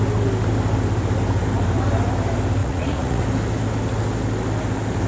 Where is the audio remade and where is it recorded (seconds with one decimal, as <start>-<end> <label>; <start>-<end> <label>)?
0.0-2.6 recorded; 2.6-3.2 remade; 3.2-5.1 recorded